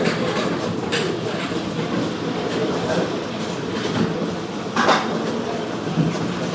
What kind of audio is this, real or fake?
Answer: fake